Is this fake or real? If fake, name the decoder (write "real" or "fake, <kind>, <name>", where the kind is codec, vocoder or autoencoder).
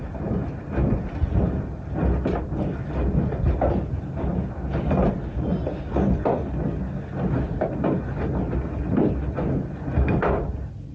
real